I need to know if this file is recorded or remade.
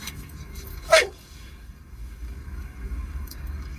remade